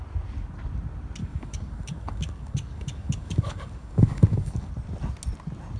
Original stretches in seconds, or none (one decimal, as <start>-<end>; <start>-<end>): 0.0-1.2; 4.7-5.8